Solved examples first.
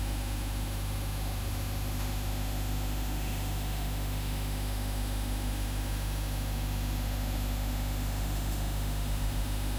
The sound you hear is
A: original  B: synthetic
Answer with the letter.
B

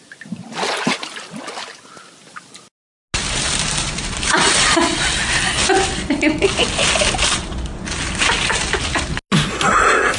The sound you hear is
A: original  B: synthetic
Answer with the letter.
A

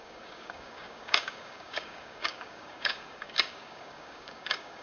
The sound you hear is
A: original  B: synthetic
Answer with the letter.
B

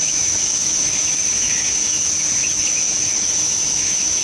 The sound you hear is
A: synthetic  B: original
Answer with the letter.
A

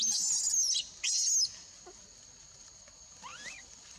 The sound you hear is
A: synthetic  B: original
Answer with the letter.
B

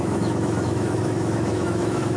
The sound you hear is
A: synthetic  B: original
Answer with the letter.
A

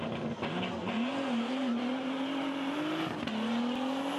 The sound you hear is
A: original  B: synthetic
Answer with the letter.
A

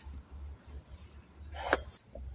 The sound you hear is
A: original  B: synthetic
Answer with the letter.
A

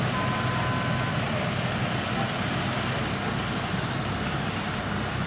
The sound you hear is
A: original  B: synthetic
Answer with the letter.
A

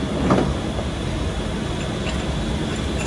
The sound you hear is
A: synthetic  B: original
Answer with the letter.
B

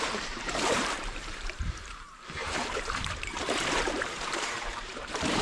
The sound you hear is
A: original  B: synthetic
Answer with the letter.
B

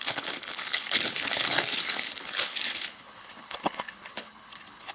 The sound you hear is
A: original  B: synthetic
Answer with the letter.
B